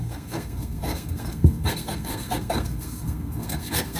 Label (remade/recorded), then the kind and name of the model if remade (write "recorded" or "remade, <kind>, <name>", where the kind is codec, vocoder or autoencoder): remade, codec, SNAC